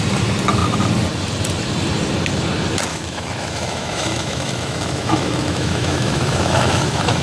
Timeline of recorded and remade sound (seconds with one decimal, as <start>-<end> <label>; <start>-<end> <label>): 0.0-2.9 recorded; 2.9-7.2 remade